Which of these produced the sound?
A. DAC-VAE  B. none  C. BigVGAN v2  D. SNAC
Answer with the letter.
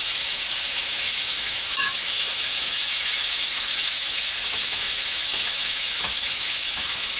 A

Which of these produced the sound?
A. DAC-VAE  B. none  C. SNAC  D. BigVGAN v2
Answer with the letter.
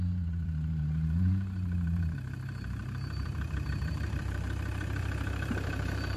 D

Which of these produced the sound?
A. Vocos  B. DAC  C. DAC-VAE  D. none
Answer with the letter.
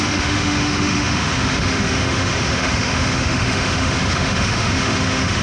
C